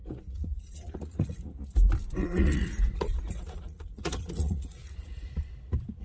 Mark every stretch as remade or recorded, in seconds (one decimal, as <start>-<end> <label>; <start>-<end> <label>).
0.0-1.6 remade; 1.6-2.2 recorded; 2.2-5.3 remade; 5.3-6.0 recorded